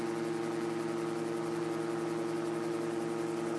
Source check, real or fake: real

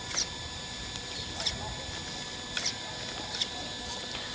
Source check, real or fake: real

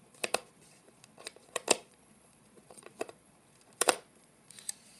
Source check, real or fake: fake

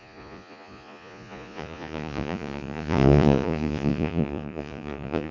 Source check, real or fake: fake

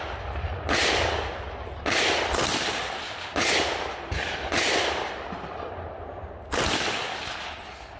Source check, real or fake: real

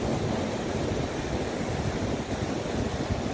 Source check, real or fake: real